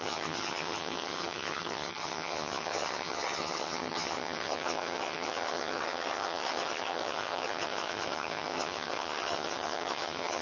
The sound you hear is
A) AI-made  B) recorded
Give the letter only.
A